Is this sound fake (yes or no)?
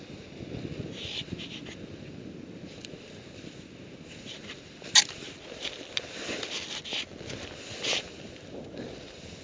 no